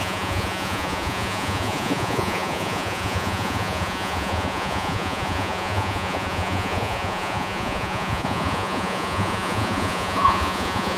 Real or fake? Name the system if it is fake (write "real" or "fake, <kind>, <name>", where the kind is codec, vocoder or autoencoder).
fake, vocoder, Vocos